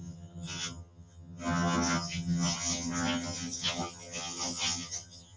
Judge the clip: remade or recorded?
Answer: remade